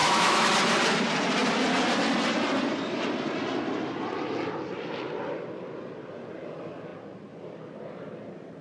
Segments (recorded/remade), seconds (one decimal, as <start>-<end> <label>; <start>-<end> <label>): 0.0-0.5 remade; 0.5-8.6 recorded